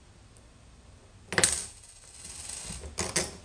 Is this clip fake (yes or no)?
no